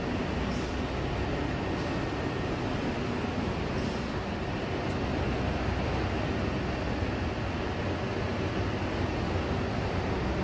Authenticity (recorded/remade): recorded